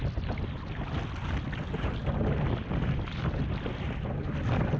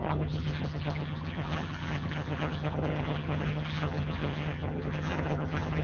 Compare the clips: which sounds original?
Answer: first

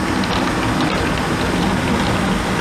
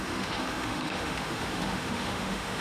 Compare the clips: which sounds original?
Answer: first